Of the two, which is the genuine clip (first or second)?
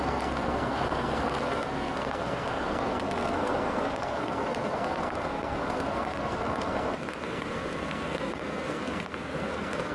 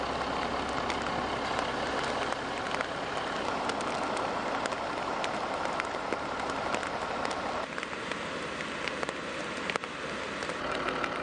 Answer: second